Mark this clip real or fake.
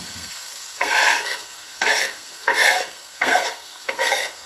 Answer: fake